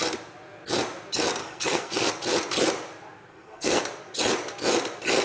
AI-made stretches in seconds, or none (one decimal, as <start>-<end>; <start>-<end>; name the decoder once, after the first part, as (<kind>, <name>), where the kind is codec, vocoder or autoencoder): 1.4-2.1 (codec, SNAC); 3.3-3.8